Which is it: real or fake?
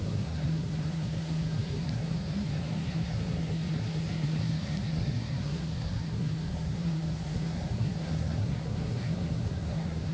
fake